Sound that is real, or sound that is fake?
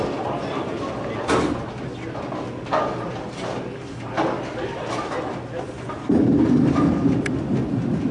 real